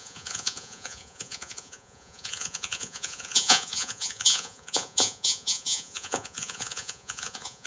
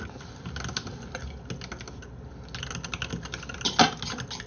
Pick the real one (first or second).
second